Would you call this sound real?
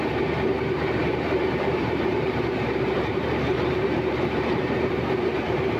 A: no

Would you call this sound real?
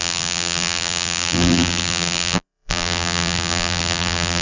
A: no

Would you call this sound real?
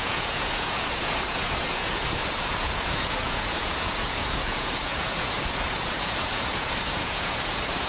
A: no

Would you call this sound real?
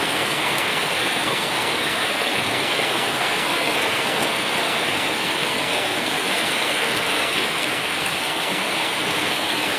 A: no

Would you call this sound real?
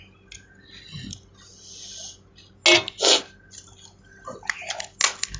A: yes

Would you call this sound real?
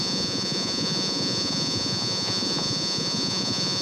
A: no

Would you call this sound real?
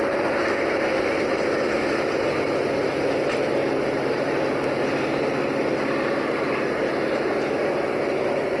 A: yes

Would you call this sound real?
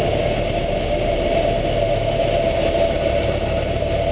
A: yes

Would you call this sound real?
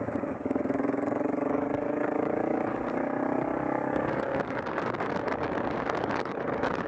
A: no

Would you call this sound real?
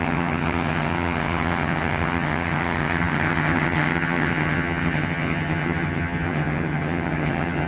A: no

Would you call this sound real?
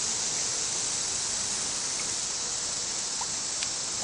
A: yes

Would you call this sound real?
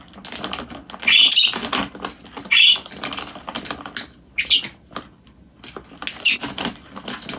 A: yes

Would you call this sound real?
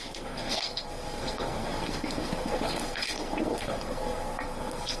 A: no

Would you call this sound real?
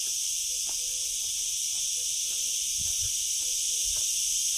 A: no